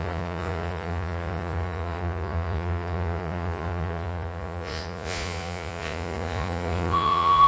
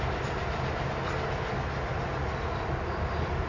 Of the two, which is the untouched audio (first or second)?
second